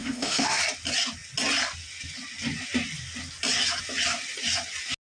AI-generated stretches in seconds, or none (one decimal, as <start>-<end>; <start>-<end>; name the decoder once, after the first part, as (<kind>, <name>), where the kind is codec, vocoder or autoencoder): 0.0-0.6 (autoencoder, DAC-VAE)